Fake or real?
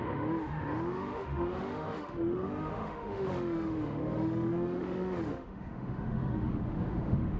fake